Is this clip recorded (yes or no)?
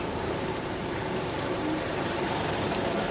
no